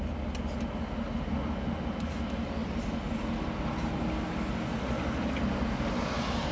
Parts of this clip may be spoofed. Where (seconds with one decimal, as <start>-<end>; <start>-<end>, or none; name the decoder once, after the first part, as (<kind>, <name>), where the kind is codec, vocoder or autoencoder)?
none